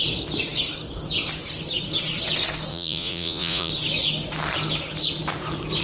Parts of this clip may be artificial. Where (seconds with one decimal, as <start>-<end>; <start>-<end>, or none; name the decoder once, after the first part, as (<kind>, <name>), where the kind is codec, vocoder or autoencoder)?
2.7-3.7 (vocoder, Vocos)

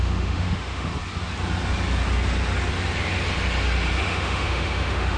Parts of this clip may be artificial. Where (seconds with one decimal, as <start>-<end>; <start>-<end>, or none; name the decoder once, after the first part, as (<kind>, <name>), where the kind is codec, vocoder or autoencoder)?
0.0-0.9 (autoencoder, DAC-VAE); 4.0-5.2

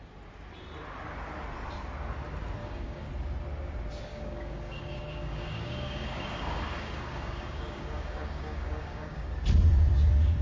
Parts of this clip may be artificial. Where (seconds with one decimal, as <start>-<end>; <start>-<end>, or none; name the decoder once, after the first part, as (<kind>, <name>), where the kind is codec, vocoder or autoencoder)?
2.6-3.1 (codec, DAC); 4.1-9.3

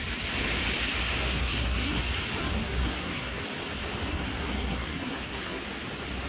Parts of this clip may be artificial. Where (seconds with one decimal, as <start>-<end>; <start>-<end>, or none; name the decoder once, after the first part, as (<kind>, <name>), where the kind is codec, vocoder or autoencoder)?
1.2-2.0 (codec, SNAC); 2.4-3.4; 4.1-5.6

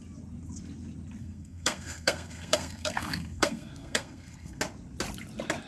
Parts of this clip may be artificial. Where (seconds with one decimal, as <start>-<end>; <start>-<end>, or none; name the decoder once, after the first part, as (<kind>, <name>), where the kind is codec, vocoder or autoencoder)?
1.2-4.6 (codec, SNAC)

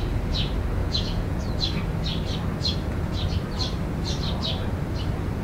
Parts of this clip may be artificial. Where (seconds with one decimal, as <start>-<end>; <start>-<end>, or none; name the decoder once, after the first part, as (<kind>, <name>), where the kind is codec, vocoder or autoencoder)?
0.8-1.5 (vocoder, Vocos)